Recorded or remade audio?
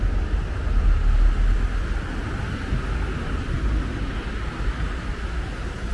recorded